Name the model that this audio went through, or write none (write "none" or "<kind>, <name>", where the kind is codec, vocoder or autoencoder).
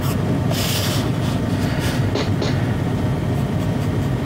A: none